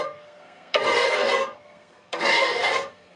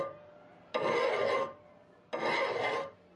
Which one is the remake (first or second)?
first